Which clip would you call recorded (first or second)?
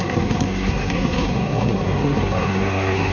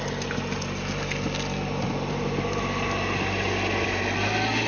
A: second